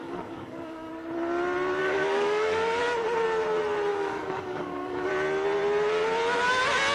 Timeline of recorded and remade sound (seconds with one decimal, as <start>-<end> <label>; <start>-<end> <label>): 0.0-0.9 remade; 0.9-1.8 recorded; 1.8-2.8 remade; 2.8-3.9 recorded; 3.9-5.1 remade; 5.1-6.9 recorded